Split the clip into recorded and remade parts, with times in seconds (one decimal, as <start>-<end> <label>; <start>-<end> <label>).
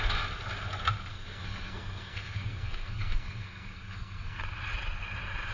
0.0-1.1 recorded; 1.1-4.4 remade; 4.4-5.5 recorded